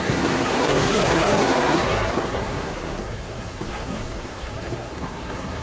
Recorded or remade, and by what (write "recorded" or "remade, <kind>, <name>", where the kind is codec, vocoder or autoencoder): remade, codec, SNAC